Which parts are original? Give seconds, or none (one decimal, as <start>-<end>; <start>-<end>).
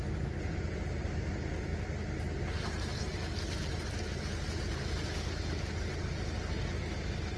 0.0-7.4